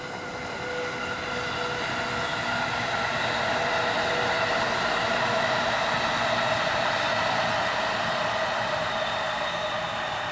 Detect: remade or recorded recorded